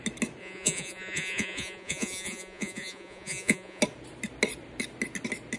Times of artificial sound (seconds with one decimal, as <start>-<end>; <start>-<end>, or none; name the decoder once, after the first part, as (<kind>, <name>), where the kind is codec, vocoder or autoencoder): 0.4-3.8 (vocoder, Vocos)